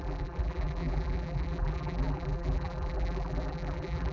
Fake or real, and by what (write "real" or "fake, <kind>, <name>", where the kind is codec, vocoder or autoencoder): fake, vocoder, BigVGAN v2